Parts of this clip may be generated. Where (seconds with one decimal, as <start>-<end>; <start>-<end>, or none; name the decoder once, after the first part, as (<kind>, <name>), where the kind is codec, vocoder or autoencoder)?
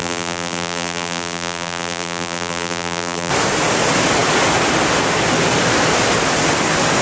0.0-3.3 (vocoder, BigVGAN v2)